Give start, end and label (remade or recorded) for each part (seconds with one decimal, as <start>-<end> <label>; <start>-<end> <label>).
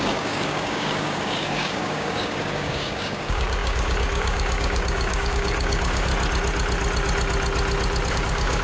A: 0.0-6.1 remade; 6.1-8.1 recorded; 8.1-8.6 remade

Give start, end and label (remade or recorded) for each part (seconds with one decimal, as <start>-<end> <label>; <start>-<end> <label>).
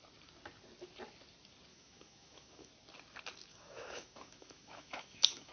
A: 0.0-1.7 recorded; 1.7-2.7 remade; 2.7-3.5 recorded; 3.5-5.5 remade